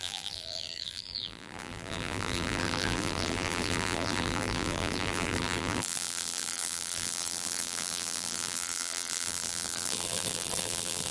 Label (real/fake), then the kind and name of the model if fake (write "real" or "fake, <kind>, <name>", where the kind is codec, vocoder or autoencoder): fake, vocoder, BigVGAN v2